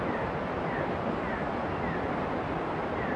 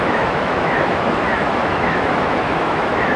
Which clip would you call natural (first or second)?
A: first